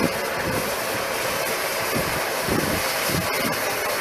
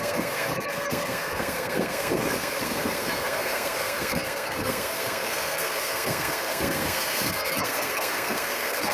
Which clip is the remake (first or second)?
second